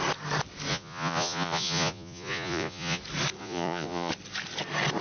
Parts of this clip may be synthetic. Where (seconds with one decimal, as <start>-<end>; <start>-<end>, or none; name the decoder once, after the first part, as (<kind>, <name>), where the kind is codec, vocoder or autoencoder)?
0.7-3.0 (vocoder, Vocos); 3.4-4.1